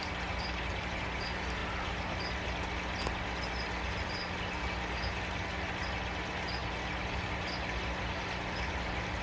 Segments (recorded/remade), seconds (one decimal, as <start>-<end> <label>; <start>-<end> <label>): 0.0-9.2 recorded